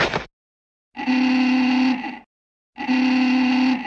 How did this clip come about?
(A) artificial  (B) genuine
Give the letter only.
B